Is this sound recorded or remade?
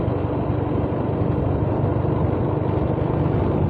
recorded